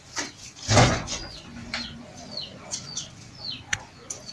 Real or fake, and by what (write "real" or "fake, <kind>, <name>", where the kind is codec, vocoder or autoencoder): fake, vocoder, Vocos